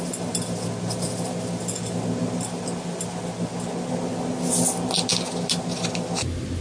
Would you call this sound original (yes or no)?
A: yes